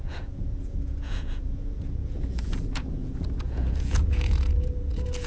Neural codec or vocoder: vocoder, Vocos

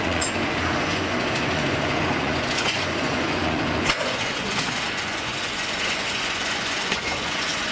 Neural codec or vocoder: vocoder, Vocos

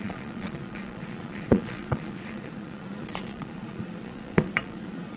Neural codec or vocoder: vocoder, Vocos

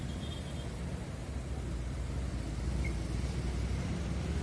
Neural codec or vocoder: none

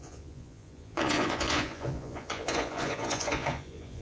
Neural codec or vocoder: vocoder, Vocos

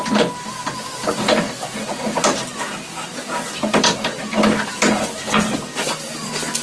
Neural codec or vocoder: none